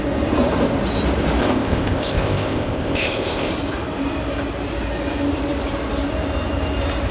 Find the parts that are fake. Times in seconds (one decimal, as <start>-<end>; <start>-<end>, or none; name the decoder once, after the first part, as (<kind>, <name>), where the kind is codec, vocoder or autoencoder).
1.4-3.5 (codec, ZipCodec)

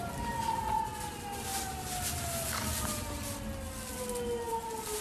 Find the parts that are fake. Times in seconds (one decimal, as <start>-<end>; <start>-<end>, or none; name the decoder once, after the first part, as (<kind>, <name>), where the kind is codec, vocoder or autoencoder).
none

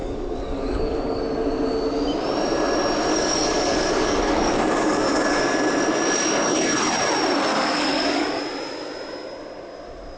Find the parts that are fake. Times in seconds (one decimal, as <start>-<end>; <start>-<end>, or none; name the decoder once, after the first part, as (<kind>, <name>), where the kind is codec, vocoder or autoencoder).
0.0-1.2 (codec, DAC); 3.1-5.3; 7.5-8.4

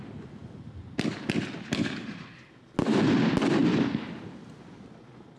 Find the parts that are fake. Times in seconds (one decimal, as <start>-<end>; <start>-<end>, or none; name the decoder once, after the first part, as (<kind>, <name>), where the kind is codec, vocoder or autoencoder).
none

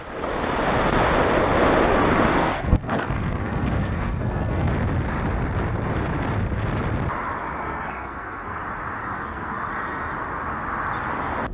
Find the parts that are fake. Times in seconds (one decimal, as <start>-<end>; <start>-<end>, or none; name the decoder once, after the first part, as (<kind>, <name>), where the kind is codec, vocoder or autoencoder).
2.3-4.7 (codec, SNAC); 7.6-8.6; 9.0-9.7

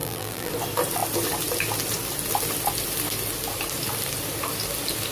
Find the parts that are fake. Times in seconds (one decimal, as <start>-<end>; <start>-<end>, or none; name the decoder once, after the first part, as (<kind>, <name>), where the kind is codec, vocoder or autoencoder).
0.0-0.5 (vocoder, BigVGAN v2)